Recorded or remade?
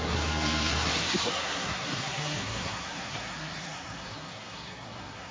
remade